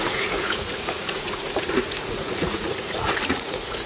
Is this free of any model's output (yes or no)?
no